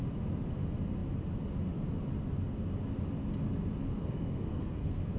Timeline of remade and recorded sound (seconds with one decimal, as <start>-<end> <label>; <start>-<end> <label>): 0.0-3.9 recorded; 3.9-5.2 remade